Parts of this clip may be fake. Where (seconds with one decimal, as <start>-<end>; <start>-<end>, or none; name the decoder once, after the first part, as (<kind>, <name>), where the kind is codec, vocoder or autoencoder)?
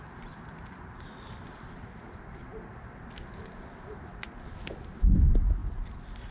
none